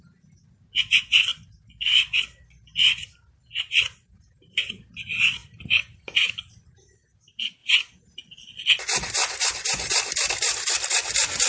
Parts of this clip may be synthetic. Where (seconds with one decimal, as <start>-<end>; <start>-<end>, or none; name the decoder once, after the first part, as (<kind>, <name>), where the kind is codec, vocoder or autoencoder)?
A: 9.2-10.9 (vocoder, BigVGAN v2)